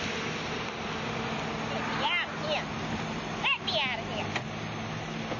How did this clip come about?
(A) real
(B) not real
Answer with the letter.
A